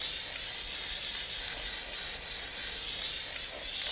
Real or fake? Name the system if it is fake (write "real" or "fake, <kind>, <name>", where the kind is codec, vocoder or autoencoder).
real